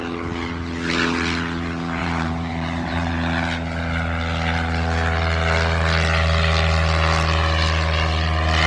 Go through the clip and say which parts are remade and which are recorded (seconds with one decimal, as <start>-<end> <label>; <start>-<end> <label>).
0.0-2.0 recorded; 2.0-3.1 remade; 3.1-8.7 recorded